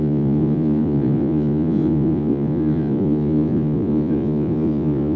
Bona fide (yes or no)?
no